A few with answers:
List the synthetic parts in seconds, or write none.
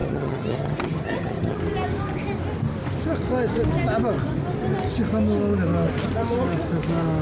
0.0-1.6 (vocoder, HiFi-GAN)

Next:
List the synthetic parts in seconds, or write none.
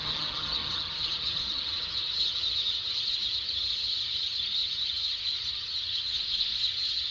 0.0-6.1 (vocoder, HiFi-GAN); 6.6-7.1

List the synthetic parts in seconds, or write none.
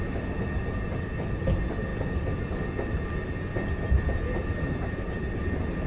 none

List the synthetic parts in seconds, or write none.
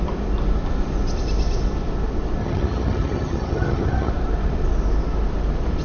2.4-4.1 (vocoder, HiFi-GAN)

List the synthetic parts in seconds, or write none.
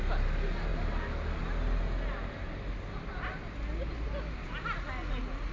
none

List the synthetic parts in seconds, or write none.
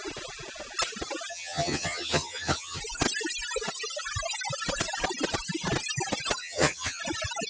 1.3-2.8 (vocoder, HiFi-GAN); 6.4-7.0